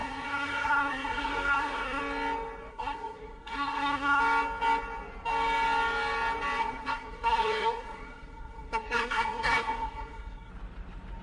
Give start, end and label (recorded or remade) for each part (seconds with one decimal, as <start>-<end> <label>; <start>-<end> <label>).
0.0-2.0 remade; 2.0-2.7 recorded; 2.7-4.2 remade; 4.2-6.6 recorded; 6.6-10.5 remade; 10.5-11.2 recorded